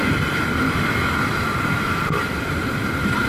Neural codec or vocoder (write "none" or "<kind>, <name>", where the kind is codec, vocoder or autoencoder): none